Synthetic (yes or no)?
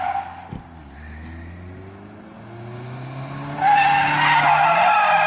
no